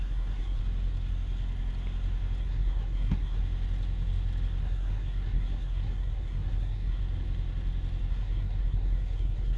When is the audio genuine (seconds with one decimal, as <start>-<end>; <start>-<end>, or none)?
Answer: 0.6-2.4; 3.4-4.6; 7.0-8.1